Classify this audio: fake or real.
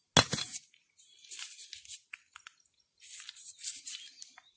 real